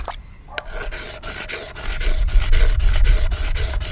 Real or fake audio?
real